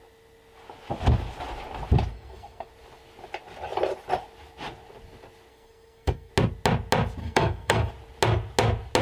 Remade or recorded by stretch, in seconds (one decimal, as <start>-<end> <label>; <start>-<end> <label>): 0.0-2.1 recorded; 2.1-2.7 remade; 2.7-5.5 recorded; 5.5-6.3 remade; 6.3-7.2 recorded; 7.2-7.9 remade; 7.9-9.0 recorded